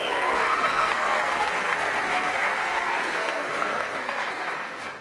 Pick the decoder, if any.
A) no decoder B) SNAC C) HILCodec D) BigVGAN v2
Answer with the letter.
B